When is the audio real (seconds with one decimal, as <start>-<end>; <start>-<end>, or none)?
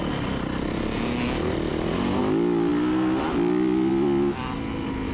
0.0-5.1